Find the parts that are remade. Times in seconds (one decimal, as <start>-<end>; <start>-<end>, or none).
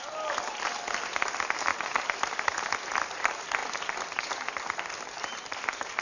none